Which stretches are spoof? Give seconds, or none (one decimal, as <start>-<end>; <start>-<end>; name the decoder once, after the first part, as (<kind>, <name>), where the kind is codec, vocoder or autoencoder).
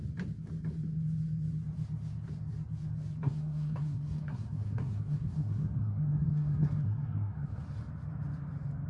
3.2-7.6 (codec, SNAC)